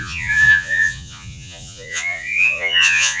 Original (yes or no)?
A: no